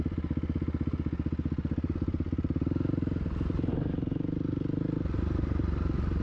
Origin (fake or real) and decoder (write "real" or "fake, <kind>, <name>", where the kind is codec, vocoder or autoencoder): real